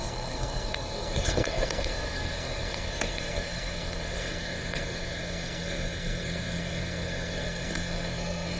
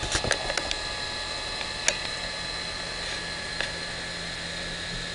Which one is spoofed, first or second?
first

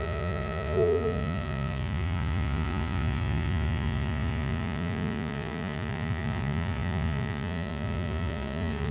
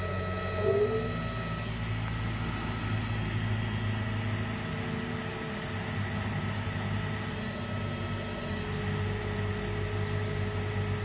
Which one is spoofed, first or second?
first